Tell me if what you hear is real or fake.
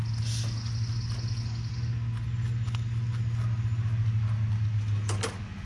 real